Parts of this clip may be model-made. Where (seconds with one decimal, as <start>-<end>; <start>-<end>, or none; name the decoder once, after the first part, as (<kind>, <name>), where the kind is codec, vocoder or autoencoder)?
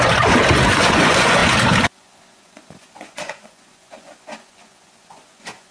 0.0-5.7 (vocoder, Vocos)